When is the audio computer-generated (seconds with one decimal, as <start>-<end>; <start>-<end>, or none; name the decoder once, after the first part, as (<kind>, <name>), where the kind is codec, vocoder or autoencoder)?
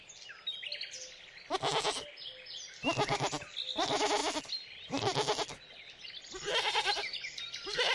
4.2-7.4 (vocoder, BigVGAN v2)